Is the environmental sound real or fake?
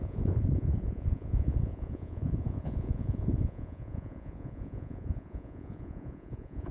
fake